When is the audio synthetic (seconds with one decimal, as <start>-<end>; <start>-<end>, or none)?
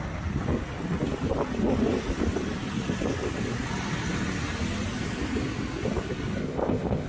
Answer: 6.4-7.1